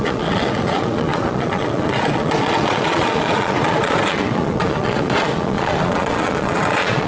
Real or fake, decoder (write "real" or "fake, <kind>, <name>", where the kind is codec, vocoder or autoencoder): fake, vocoder, Vocos